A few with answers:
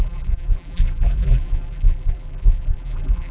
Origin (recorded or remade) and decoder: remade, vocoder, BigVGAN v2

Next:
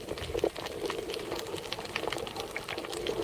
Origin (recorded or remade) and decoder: remade, vocoder, BigVGAN v2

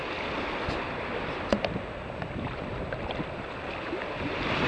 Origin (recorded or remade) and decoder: recorded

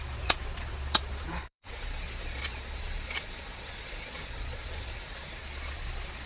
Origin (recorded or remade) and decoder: remade, vocoder, Vocos